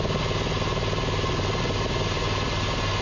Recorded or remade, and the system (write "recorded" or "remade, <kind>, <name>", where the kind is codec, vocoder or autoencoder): recorded